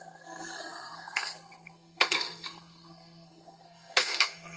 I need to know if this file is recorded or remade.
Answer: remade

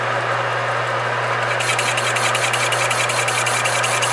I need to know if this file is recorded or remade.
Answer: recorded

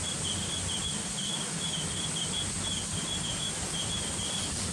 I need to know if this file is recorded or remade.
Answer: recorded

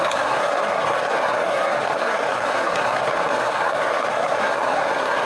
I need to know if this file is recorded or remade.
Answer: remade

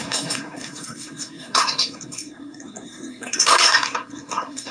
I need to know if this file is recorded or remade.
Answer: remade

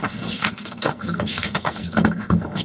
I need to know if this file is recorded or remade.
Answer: remade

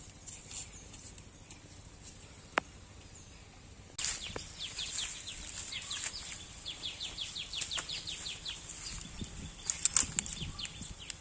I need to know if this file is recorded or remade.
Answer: recorded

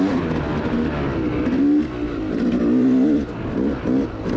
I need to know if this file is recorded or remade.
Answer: recorded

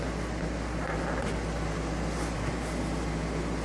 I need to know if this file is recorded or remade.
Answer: recorded